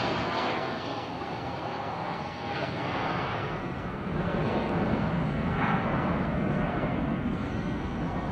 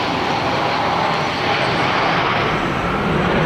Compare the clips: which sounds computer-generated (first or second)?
first